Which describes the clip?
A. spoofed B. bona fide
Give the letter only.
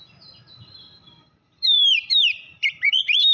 A